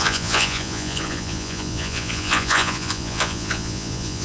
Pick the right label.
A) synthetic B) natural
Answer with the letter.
A